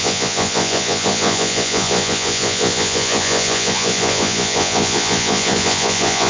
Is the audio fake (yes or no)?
yes